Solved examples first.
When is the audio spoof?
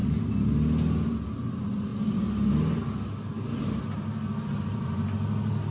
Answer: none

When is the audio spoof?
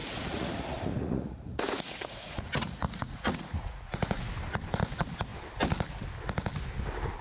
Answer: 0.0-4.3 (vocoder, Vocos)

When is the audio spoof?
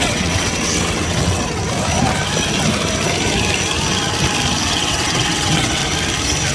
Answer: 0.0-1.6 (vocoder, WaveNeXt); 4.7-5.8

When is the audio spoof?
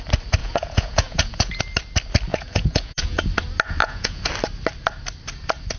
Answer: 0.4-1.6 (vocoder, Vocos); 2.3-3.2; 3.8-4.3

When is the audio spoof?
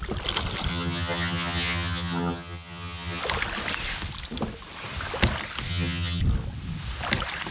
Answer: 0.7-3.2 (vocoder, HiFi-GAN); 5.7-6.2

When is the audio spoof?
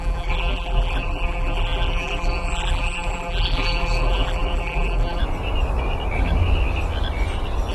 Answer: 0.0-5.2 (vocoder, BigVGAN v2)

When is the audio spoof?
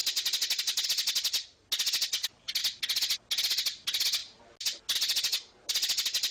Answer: none